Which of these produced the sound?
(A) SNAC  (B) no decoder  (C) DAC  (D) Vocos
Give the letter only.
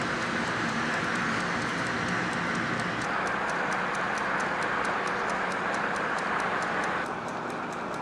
B